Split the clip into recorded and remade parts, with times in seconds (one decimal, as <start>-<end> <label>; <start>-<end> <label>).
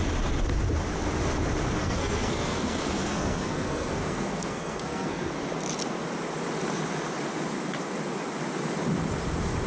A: 0.0-1.8 recorded; 1.8-5.3 remade; 5.3-9.7 recorded